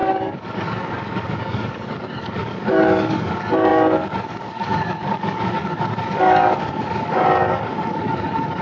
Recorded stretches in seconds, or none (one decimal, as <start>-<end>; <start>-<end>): none